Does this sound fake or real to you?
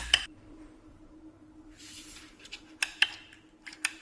fake